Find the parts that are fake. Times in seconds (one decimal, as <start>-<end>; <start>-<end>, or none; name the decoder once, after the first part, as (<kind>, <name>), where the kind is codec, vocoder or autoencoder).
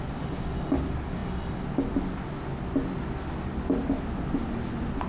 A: none